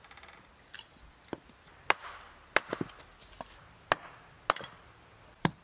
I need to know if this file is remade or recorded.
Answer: recorded